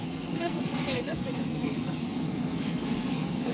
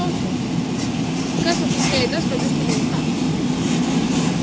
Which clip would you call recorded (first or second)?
second